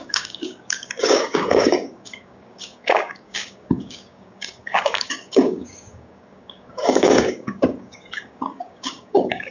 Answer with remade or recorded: remade